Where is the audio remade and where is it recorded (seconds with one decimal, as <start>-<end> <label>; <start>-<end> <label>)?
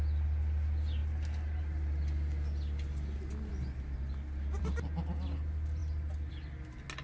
0.0-7.0 recorded